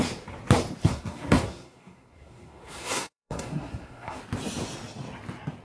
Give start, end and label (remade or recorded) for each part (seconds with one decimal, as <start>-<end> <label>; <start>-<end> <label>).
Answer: 0.0-0.8 recorded; 0.8-4.2 remade; 4.2-5.6 recorded